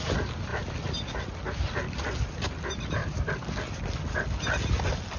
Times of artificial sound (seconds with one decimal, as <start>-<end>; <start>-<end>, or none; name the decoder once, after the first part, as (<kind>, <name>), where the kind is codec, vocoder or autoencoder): 3.0-3.7 (vocoder, BigVGAN v2)

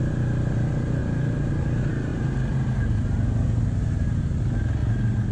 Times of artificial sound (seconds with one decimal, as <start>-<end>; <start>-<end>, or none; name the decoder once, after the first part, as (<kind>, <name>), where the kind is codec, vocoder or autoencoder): 1.0-1.5 (vocoder, BigVGAN v2); 2.1-4.2; 4.8-5.3